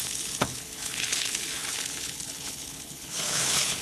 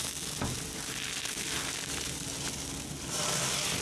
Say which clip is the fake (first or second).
first